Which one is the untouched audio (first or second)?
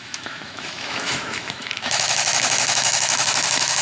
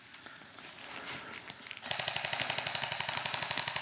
second